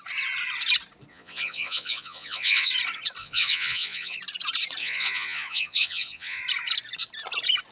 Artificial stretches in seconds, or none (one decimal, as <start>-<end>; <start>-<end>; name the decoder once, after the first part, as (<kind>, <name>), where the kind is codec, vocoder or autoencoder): 1.1-2.7 (vocoder, Vocos); 3.2-4.2; 4.8-6.4